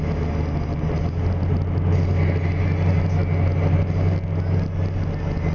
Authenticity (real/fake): real